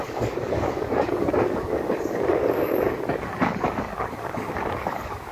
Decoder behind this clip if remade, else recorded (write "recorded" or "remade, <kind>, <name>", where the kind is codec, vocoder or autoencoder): remade, codec, DAC